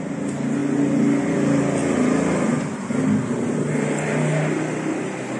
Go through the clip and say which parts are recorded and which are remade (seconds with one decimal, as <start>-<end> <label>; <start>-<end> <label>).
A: 0.0-5.4 recorded